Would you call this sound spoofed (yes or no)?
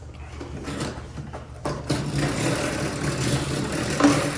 no